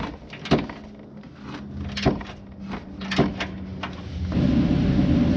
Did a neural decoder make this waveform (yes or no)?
no